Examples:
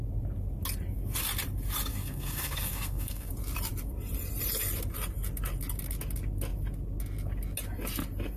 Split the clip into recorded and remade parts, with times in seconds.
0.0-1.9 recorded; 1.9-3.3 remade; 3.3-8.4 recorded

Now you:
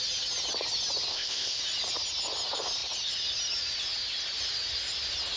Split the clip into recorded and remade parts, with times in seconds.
0.0-1.1 recorded; 1.1-1.6 remade; 1.6-5.4 recorded

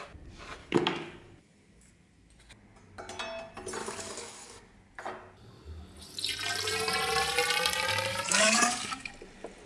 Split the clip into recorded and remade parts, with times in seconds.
0.0-0.6 recorded; 0.6-1.9 remade; 1.9-3.8 recorded; 3.8-4.6 remade; 4.6-8.1 recorded; 8.1-9.1 remade; 9.1-9.7 recorded

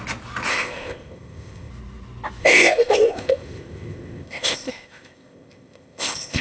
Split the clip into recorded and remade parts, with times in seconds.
0.0-0.5 recorded; 0.5-1.7 remade; 1.7-2.4 recorded; 2.4-6.4 remade

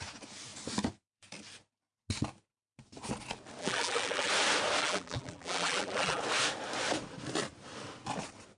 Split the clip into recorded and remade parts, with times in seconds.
0.0-3.6 recorded; 3.6-4.3 remade; 4.3-4.8 recorded; 4.8-6.2 remade; 6.2-8.6 recorded

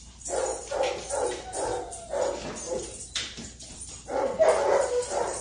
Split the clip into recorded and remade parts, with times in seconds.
0.0-1.7 remade; 1.7-2.5 recorded; 2.5-5.4 remade